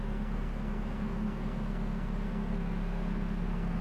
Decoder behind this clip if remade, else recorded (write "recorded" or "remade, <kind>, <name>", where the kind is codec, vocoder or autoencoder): remade, codec, SNAC